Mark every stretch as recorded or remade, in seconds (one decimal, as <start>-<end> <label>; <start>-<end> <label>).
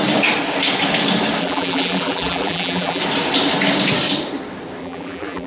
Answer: 0.0-1.4 recorded; 1.4-3.0 remade; 3.0-4.8 recorded; 4.8-5.5 remade